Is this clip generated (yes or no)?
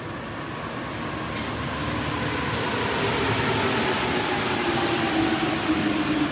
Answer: no